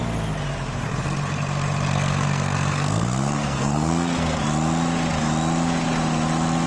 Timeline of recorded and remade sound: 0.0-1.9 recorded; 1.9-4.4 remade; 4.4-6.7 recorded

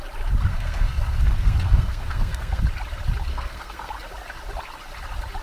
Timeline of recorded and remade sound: 0.0-0.5 recorded; 0.5-2.6 remade; 2.6-3.3 recorded; 3.3-3.9 remade; 3.9-5.4 recorded

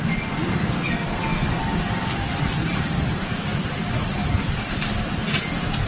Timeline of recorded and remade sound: 0.0-0.5 recorded; 0.5-1.6 remade; 1.6-5.9 recorded

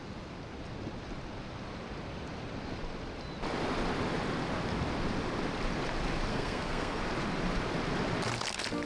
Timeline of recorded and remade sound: 0.0-6.3 recorded; 6.3-7.0 remade; 7.0-8.9 recorded

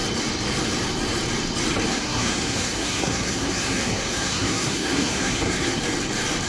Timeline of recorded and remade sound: 0.0-1.9 recorded; 1.9-5.8 remade; 5.8-6.5 recorded

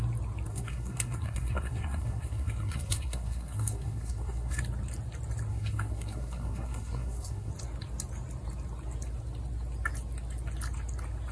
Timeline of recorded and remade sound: 0.0-0.5 recorded; 0.5-4.6 remade; 4.6-5.5 recorded; 5.5-7.5 remade; 7.5-11.3 recorded

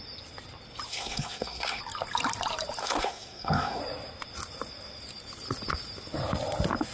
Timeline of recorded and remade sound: 0.0-0.9 recorded; 0.9-1.8 remade; 1.8-2.8 recorded; 2.8-3.8 remade; 3.8-6.9 recorded

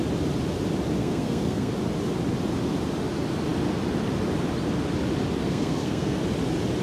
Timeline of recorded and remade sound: 0.0-1.0 recorded; 1.0-1.7 remade; 1.7-5.4 recorded; 5.4-6.2 remade; 6.2-6.8 recorded